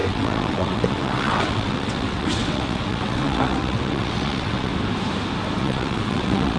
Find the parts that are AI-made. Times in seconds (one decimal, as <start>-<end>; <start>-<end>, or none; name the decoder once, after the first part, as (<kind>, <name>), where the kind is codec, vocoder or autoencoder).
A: 0.0-4.7 (vocoder, WaveNeXt); 5.6-6.6